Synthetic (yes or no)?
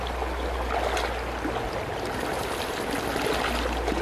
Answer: no